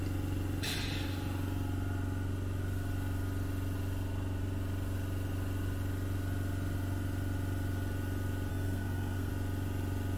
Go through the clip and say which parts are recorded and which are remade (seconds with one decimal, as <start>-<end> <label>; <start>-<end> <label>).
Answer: 0.0-8.5 recorded; 8.5-9.3 remade; 9.3-10.2 recorded